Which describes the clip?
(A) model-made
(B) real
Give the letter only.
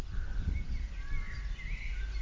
B